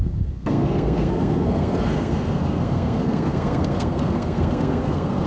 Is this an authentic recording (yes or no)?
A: no